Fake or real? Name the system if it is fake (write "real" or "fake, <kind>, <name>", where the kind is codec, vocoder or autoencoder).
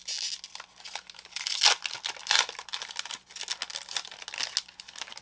real